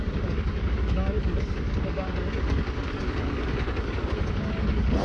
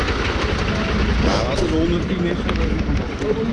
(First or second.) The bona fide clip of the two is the second